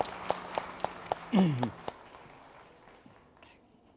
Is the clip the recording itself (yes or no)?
yes